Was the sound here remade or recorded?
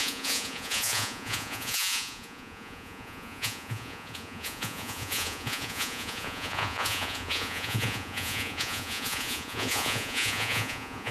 remade